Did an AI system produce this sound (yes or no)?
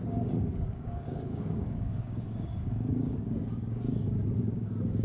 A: yes